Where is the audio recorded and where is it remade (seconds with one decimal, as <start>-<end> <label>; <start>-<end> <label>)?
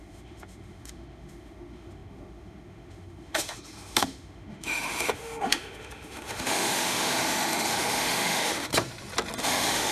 0.0-8.7 remade; 8.7-9.4 recorded; 9.4-9.9 remade